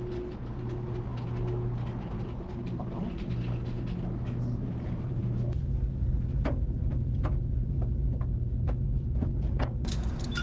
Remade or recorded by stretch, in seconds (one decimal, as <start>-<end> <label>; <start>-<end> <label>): 0.0-10.4 recorded